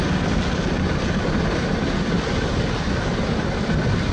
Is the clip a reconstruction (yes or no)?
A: no